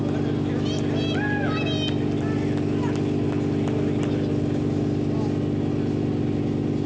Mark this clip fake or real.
real